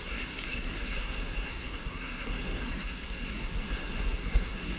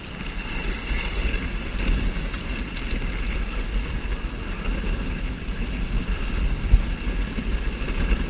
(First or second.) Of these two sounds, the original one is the second